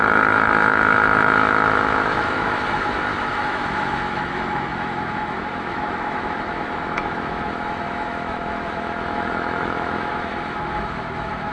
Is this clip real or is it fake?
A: fake